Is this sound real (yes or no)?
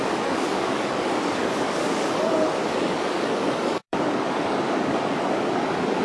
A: no